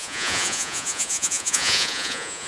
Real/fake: fake